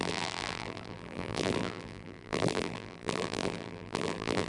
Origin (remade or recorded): remade